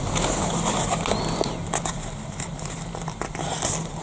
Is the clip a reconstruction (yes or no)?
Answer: no